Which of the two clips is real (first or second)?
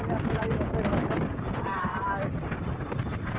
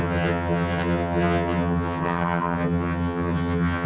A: first